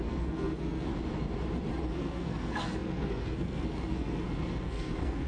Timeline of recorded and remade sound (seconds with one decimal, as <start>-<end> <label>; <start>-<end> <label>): 0.0-0.9 remade; 0.9-1.9 recorded; 1.9-5.3 remade